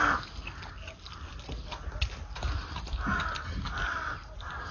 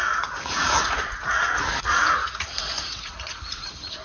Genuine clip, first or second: first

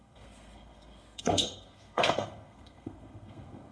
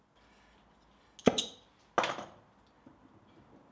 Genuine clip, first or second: second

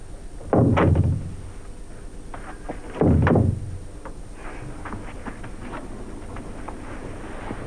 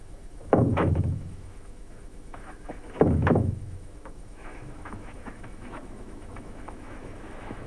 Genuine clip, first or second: first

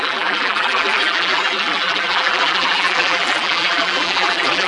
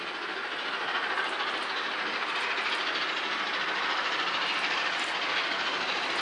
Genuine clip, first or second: second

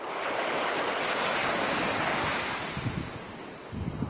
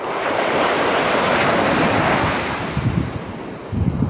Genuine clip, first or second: first